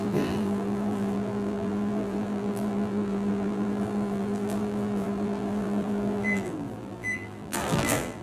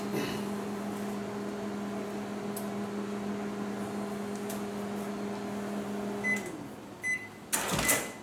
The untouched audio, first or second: second